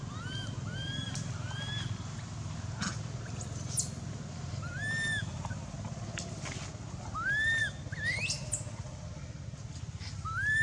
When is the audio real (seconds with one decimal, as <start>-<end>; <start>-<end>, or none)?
0.0-10.6